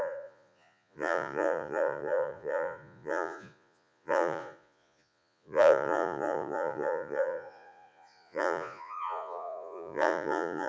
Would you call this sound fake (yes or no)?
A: yes